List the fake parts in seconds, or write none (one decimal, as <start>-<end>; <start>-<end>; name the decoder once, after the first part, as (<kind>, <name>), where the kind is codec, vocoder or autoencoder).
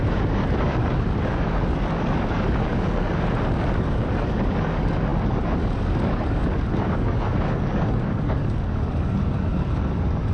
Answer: 0.0-10.3 (codec, DAC)